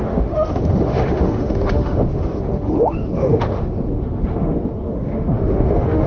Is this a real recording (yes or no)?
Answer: no